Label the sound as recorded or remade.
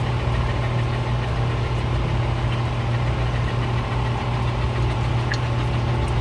recorded